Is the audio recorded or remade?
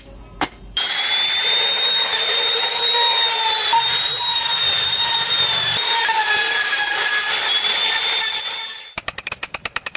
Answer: remade